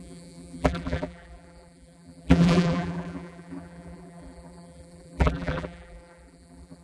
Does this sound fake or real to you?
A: fake